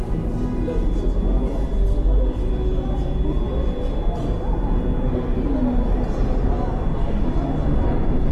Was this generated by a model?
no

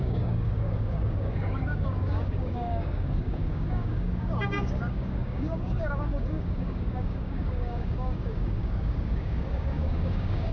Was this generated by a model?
yes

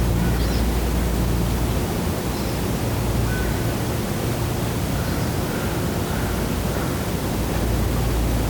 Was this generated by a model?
no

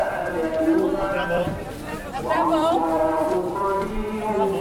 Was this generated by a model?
yes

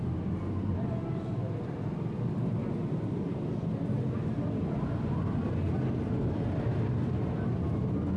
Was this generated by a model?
no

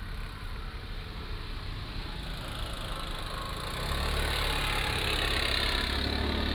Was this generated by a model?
no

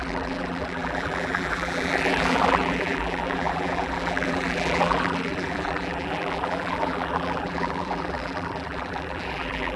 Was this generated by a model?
yes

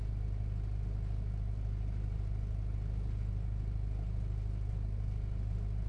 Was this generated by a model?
no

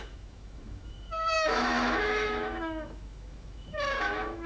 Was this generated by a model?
yes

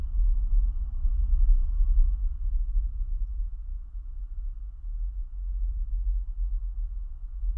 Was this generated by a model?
no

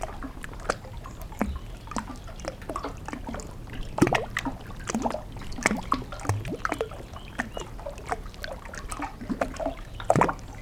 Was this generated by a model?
no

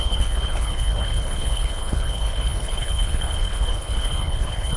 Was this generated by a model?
yes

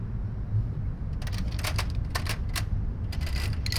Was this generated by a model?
no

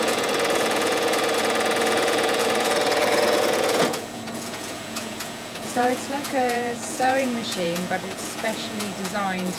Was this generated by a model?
yes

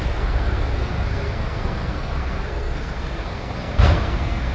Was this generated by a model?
yes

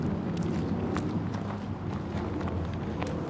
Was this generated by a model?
no